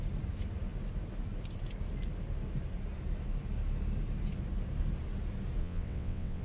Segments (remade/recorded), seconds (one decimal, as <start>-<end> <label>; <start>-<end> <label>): 0.0-5.6 recorded; 5.6-6.4 remade